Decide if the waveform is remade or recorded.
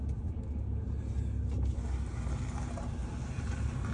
recorded